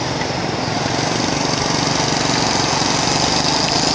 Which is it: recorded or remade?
recorded